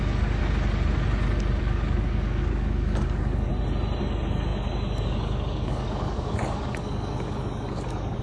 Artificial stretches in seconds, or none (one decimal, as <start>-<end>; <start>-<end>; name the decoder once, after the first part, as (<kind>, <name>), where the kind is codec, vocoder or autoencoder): 0.0-0.4 (codec, DAC); 1.6-3.5; 4.0-8.2